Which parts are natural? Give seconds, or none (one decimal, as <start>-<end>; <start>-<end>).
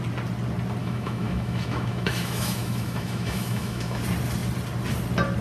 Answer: 0.0-0.8; 4.0-5.4